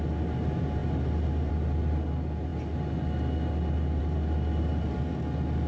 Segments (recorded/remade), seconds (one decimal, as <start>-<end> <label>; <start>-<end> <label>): 0.0-5.7 recorded